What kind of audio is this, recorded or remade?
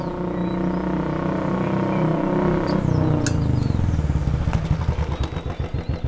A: recorded